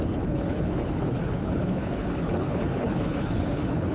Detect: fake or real fake